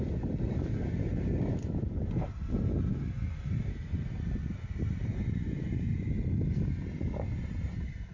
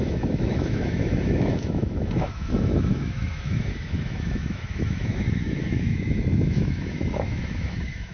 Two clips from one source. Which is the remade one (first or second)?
second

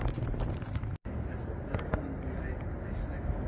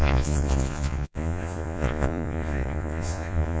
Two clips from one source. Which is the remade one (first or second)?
second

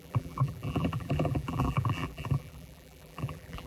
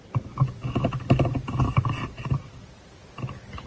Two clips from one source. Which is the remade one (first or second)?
first